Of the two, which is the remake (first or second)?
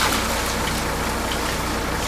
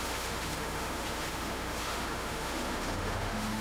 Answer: second